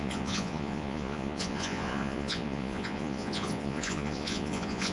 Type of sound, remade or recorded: remade